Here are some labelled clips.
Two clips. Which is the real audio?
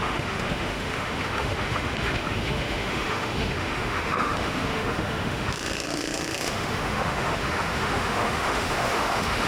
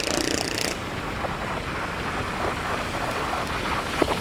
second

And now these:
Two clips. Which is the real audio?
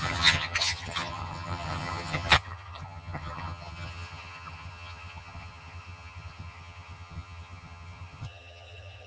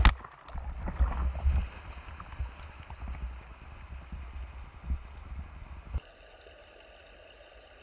second